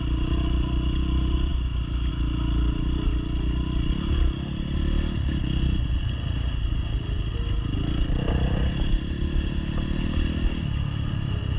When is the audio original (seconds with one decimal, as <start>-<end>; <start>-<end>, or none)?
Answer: 0.0-11.6